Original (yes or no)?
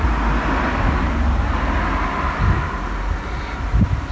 yes